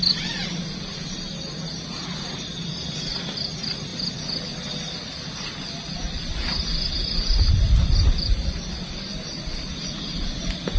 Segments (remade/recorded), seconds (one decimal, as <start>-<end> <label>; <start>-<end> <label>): 0.0-10.8 recorded